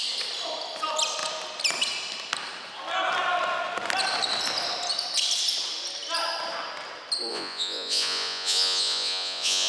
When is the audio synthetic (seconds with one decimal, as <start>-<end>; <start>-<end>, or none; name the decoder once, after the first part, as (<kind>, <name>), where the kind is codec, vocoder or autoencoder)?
7.3-9.7 (vocoder, Vocos)